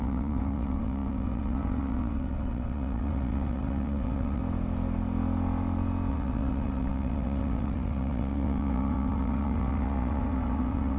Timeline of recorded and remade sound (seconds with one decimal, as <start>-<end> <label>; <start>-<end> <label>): 0.0-4.4 remade; 4.4-6.1 recorded; 6.1-11.0 remade